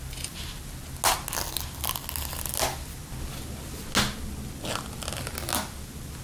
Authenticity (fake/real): real